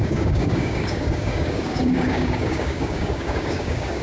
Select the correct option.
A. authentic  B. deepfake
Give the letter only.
B